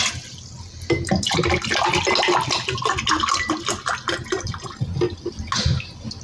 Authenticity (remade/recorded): recorded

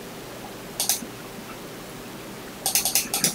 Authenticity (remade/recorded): recorded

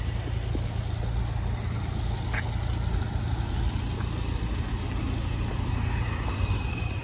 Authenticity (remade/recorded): recorded